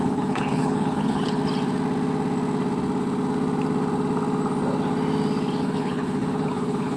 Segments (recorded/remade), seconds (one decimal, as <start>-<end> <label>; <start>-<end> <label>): 0.0-1.4 remade; 1.4-5.6 recorded; 5.6-7.0 remade